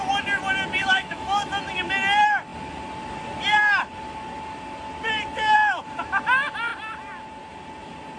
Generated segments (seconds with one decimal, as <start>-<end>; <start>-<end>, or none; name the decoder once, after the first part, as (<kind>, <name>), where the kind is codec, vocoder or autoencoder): 0.8-1.5 (autoencoder, DAC-VAE)